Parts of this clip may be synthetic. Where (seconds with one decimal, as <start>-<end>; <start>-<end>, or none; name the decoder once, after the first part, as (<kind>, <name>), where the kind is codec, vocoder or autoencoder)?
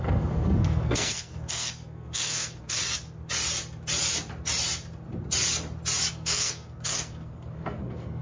0.0-2.8 (codec, SNAC); 6.1-8.2